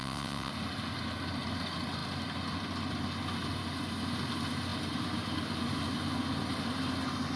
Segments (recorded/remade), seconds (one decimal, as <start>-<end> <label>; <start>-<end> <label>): 0.0-0.5 remade; 0.5-7.4 recorded